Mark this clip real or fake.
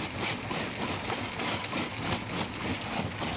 real